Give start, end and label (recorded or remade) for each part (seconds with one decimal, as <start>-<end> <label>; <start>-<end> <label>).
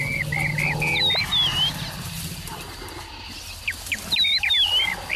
0.0-1.3 recorded; 1.3-3.1 remade; 3.1-5.2 recorded